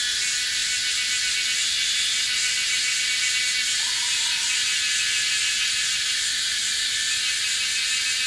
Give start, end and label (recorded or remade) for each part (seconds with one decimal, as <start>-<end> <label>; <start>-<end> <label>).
0.0-8.3 recorded